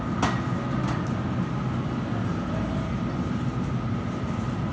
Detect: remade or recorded recorded